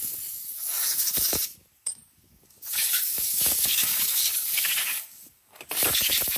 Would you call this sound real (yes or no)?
no